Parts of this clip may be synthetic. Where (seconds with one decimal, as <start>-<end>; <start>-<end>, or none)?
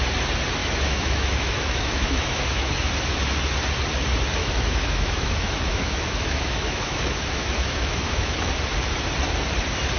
0.6-2.7; 4.4-8.5